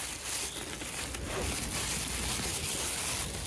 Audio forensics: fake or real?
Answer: real